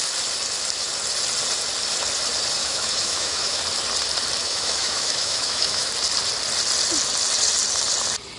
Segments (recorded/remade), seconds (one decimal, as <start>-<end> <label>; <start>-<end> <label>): 0.0-2.6 recorded; 2.6-3.6 remade; 3.6-4.4 recorded; 4.4-5.9 remade; 5.9-8.4 recorded